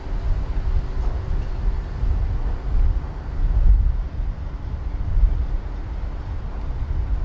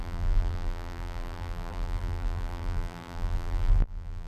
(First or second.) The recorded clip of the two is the first